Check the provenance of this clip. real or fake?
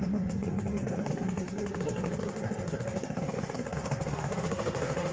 fake